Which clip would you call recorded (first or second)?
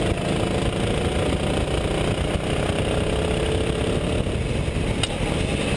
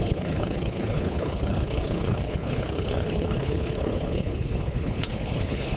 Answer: first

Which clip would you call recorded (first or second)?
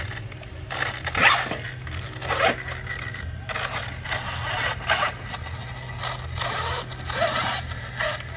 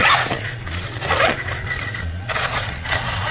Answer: first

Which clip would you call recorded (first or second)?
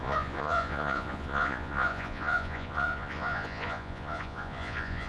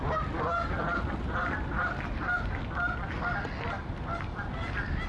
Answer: second